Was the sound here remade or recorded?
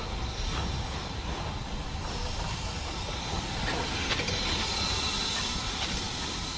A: recorded